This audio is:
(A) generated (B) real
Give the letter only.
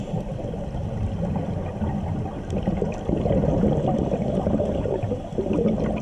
B